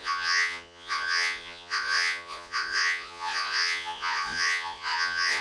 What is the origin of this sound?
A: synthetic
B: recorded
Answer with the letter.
A